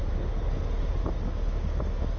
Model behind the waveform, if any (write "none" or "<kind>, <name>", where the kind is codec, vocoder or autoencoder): none